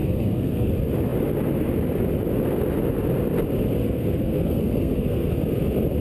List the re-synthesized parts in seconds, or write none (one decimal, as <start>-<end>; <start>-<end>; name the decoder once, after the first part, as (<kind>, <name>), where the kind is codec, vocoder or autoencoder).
0.0-0.7 (codec, SNAC); 3.8-5.3